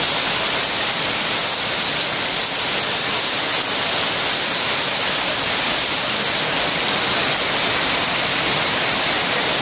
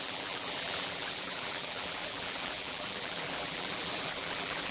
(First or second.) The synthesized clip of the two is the second